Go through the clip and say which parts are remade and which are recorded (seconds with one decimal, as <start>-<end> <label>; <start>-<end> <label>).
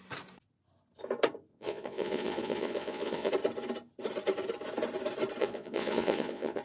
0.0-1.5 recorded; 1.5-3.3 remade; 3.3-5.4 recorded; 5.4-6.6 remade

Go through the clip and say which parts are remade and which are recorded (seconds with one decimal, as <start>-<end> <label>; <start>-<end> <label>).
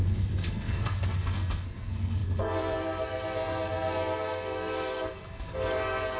0.0-6.2 remade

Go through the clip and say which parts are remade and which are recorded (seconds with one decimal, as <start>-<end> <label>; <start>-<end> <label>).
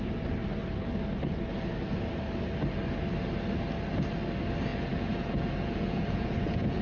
0.0-4.7 recorded; 4.7-6.8 remade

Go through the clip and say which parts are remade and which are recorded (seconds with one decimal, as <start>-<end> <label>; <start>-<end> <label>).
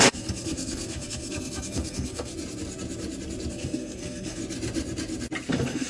0.0-2.3 remade; 2.3-3.5 recorded; 3.5-4.4 remade; 4.4-5.5 recorded; 5.5-5.9 remade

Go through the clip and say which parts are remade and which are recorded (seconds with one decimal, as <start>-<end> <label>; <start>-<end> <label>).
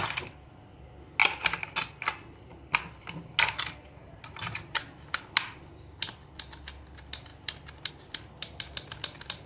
0.0-9.5 recorded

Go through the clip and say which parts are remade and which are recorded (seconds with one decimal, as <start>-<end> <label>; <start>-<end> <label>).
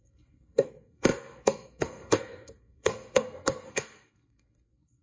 0.0-5.0 remade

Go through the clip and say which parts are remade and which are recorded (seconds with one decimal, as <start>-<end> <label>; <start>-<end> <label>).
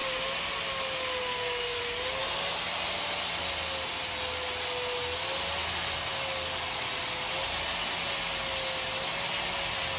0.0-1.3 recorded; 1.3-1.8 remade; 1.8-10.0 recorded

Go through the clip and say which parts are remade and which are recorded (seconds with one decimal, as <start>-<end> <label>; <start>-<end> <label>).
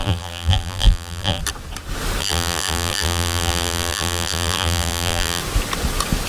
0.0-1.4 remade; 1.4-2.2 recorded; 2.2-5.4 remade; 5.4-6.3 recorded